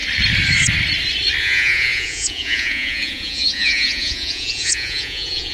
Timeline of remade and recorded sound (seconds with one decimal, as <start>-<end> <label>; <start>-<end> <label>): 0.0-1.4 recorded; 1.4-5.5 remade